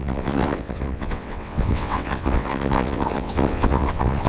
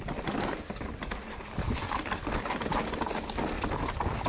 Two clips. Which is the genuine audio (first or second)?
second